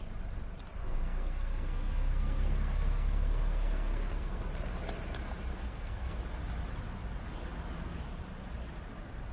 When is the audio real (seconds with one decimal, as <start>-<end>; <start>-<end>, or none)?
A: 0.0-0.8; 4.5-5.5; 6.2-9.3